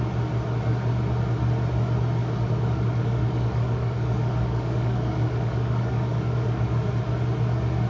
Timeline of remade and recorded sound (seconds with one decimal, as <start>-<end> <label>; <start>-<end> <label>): 0.0-2.2 recorded; 2.2-6.9 remade; 6.9-7.9 recorded